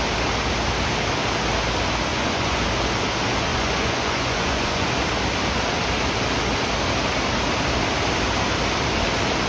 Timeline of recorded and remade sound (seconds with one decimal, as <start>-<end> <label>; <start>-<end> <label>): 0.0-2.1 recorded; 2.1-2.6 remade; 2.6-3.5 recorded; 3.5-4.9 remade; 4.9-9.5 recorded